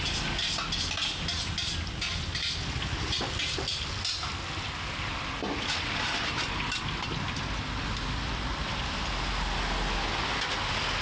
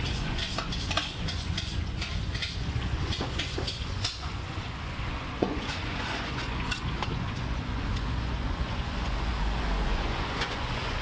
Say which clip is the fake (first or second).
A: second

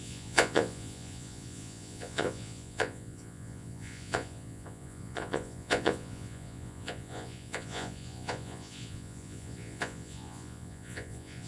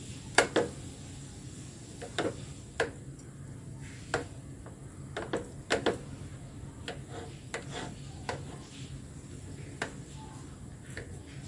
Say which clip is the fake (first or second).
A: first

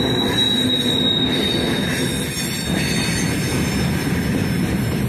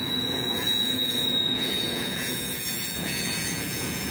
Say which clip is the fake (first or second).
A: second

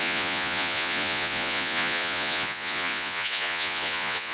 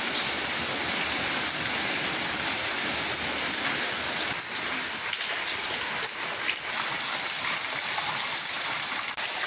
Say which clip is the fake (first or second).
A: first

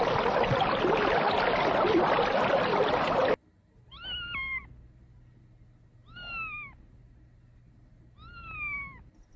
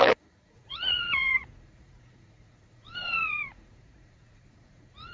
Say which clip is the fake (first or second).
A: second